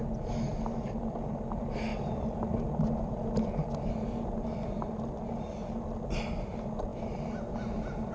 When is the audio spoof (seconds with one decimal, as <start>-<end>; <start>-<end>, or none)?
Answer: none